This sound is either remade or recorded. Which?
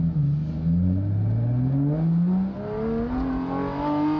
recorded